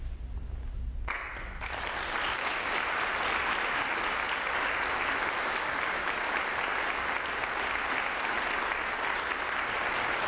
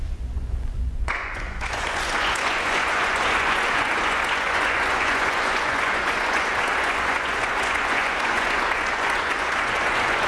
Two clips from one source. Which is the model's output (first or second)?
second